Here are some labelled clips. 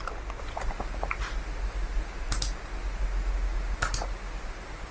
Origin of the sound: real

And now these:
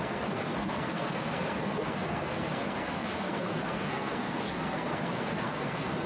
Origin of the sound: fake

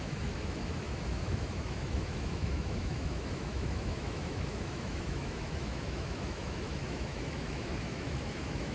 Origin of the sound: fake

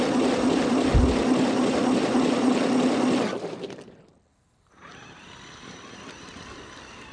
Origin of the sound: real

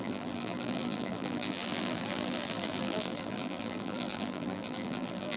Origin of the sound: fake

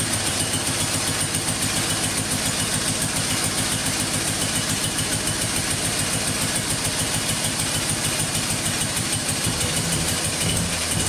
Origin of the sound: fake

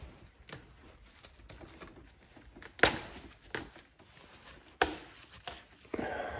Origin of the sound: real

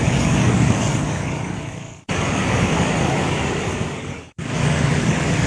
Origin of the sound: fake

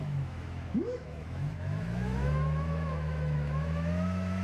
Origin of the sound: fake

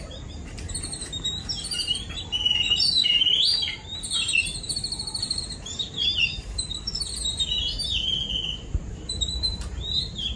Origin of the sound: fake